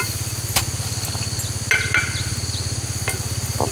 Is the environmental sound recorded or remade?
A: recorded